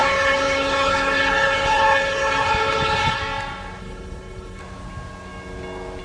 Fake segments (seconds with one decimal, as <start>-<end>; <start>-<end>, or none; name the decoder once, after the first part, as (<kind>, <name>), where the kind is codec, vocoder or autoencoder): 0.0-3.2 (codec, HILCodec); 3.8-4.6